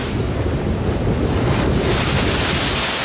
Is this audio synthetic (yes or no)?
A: no